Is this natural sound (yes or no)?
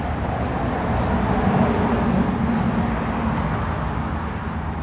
yes